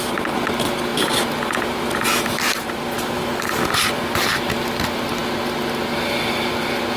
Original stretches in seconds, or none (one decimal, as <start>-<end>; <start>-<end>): 0.0-0.9; 4.5-7.0